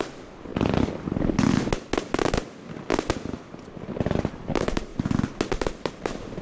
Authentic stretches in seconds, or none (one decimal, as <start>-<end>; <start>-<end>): 0.5-4.3; 4.9-5.5